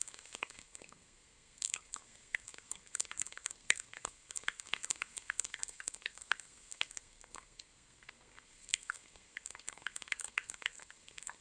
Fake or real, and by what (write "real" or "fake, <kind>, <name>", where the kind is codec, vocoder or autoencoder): fake, codec, SNAC